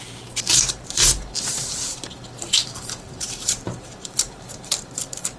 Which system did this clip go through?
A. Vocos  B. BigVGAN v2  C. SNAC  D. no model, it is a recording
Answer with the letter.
B